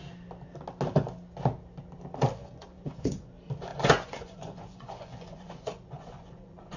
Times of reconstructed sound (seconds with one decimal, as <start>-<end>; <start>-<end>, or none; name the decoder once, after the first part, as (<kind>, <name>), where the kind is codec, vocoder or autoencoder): 2.4-3.3 (vocoder, Vocos); 3.7-6.8